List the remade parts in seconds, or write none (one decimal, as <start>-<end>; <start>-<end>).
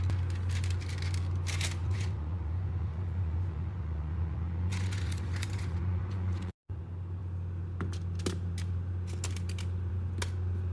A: 1.8-6.8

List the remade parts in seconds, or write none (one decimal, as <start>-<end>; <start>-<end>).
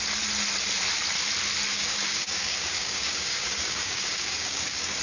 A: 1.7-5.0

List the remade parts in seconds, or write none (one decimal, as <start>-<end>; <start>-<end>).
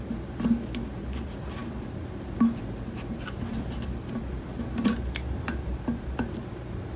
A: none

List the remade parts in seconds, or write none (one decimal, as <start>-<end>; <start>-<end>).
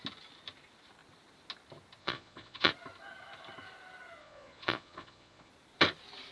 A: 2.0-2.7; 4.2-5.5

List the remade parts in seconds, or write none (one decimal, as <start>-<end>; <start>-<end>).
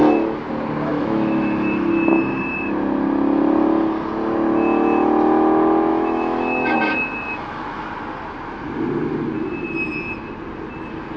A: 0.9-1.9; 5.9-7.9